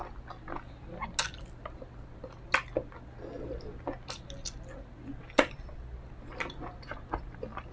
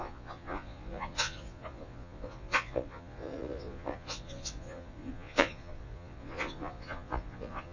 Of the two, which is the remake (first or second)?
second